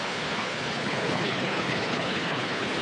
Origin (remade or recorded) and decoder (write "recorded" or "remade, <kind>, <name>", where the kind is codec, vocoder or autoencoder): remade, codec, HILCodec